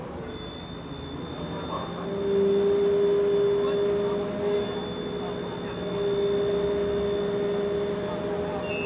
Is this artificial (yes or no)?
no